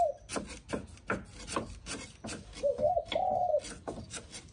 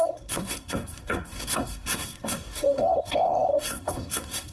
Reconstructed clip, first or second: second